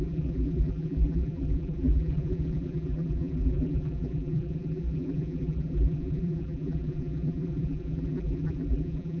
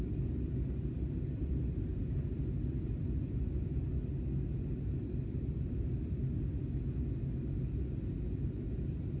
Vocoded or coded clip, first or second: first